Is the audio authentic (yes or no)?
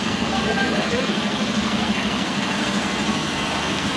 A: no